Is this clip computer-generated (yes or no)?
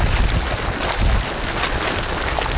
no